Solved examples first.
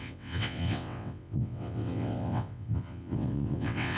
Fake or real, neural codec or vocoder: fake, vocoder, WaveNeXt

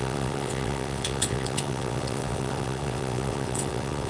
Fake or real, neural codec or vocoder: fake, vocoder, WaveNeXt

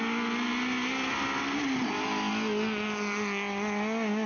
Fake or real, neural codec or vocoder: real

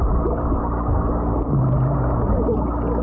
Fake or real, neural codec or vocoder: real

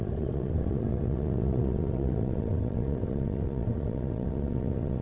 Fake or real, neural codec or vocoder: fake, vocoder, WaveNeXt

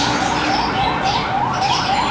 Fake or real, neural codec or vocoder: real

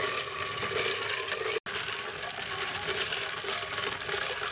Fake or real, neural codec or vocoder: real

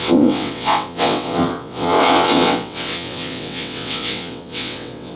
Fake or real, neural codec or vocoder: fake, vocoder, WaveNeXt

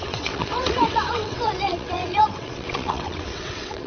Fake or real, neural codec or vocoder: fake, vocoder, WaveNeXt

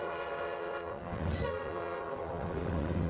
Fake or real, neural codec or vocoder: fake, vocoder, WaveNeXt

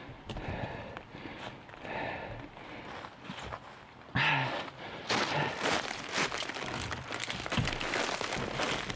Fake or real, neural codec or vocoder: real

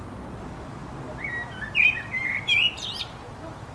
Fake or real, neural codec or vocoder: real